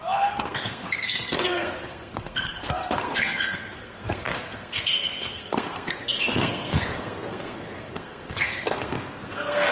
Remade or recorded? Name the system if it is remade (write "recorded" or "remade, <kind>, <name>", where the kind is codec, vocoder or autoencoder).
remade, codec, SNAC